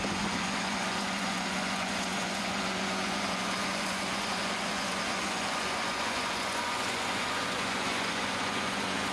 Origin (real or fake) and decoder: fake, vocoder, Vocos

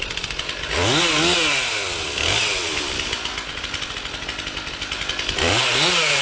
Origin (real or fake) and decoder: real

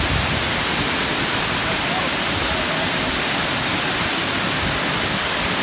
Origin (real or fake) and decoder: real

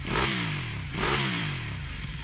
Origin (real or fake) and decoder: fake, vocoder, BigVGAN v2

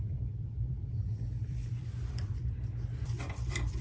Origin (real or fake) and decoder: fake, vocoder, BigVGAN v2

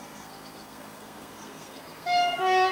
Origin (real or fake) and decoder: fake, codec, SNAC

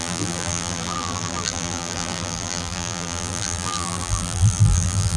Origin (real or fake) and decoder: fake, vocoder, BigVGAN v2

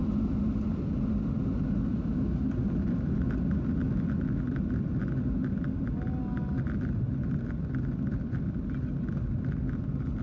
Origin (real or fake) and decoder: real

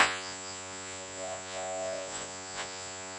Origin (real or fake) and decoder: fake, vocoder, Vocos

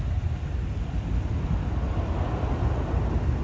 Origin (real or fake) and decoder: real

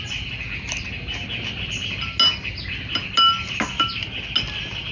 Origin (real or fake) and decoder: real